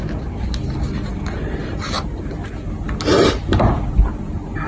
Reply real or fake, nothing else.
real